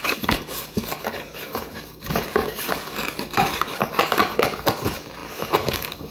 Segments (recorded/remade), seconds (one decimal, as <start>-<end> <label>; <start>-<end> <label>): 0.0-6.1 remade